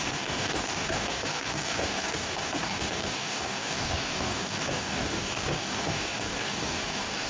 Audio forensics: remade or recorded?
remade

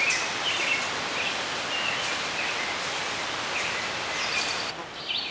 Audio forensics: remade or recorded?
recorded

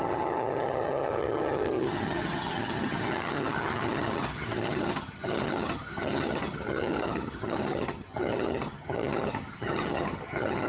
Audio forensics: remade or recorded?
remade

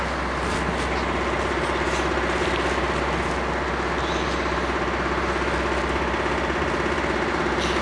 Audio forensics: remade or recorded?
recorded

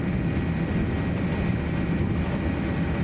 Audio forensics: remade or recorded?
recorded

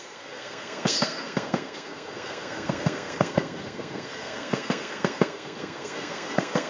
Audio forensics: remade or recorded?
remade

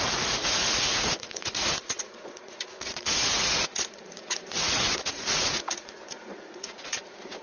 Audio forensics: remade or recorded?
remade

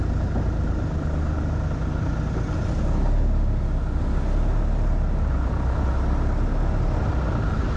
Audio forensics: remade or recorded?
recorded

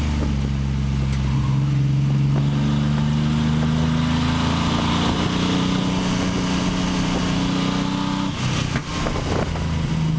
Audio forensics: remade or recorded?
recorded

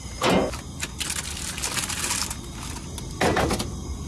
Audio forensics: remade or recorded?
recorded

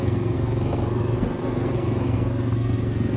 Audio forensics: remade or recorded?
remade